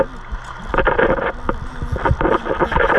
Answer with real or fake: real